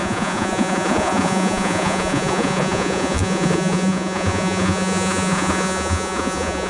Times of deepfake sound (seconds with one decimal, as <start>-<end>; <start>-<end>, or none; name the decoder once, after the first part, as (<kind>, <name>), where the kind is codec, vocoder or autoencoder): 0.0-6.7 (vocoder, Vocos)

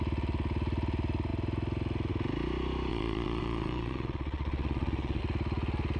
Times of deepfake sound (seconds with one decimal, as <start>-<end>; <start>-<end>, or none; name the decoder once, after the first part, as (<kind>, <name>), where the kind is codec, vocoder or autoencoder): 2.9-5.2 (vocoder, Vocos)

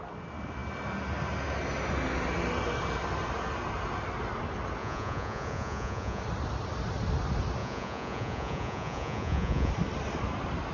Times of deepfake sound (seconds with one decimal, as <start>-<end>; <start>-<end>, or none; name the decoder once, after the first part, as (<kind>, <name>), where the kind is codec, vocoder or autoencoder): 4.8-6.2 (vocoder, Vocos); 7.6-9.7

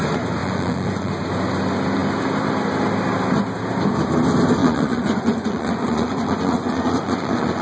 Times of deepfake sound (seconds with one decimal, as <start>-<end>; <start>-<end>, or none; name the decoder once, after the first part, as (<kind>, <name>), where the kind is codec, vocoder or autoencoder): 0.4-1.1 (vocoder, Vocos); 4.6-7.6

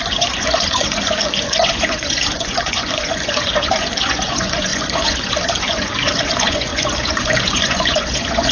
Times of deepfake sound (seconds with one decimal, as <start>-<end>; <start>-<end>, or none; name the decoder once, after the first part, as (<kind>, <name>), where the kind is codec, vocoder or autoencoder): 0.0-8.5 (vocoder, Vocos)